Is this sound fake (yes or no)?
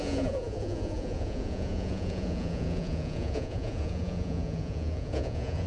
yes